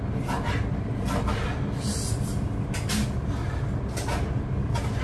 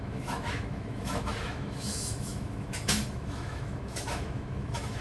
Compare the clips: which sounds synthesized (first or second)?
second